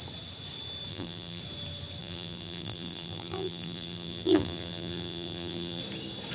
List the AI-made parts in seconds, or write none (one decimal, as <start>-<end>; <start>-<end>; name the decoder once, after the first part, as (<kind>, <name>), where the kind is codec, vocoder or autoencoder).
0.9-1.4 (vocoder, BigVGAN v2); 2.0-5.8

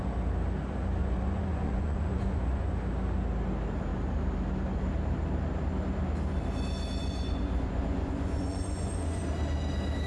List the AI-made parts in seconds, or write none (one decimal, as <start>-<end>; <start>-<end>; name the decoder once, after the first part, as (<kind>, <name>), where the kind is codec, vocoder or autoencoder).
1.0-2.7 (vocoder, Vocos); 7.0-9.2

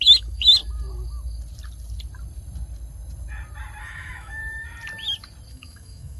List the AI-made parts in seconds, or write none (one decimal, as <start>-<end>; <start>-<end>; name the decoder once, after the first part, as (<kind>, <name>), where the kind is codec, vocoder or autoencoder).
0.0-0.6 (autoencoder, DAC-VAE); 3.8-4.4; 5.5-6.2

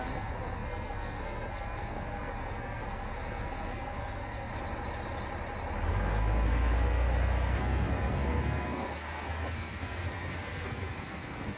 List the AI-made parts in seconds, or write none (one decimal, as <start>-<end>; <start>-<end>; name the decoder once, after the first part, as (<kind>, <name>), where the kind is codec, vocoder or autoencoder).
0.0-4.5 (codec, SNAC); 5.9-11.6

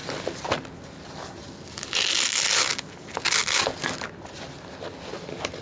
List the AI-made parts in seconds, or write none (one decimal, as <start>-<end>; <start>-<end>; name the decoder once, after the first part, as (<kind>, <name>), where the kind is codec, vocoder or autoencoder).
none

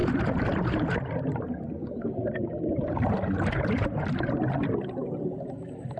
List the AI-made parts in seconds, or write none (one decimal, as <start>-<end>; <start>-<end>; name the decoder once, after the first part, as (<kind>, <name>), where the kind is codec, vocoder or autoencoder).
none

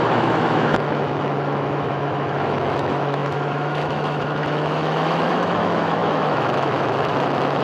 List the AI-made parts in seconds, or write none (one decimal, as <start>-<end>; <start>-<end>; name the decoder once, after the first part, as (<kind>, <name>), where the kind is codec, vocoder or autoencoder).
0.0-7.6 (autoencoder, DAC-VAE)